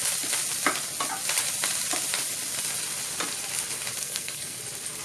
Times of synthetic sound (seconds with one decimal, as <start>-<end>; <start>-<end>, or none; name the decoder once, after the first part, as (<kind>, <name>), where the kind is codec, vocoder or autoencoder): 4.0-4.6 (codec, SNAC)